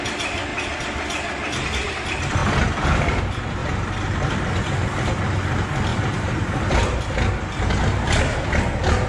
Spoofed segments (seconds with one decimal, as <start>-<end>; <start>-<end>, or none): 3.6-4.4; 5.9-6.8